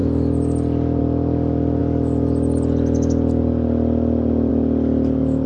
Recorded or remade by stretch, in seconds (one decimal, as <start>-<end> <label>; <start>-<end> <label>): 0.0-5.5 recorded